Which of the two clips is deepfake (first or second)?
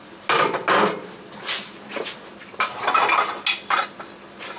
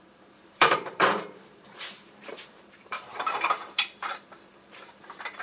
second